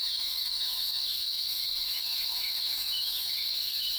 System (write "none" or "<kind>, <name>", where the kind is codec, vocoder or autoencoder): autoencoder, DAC-VAE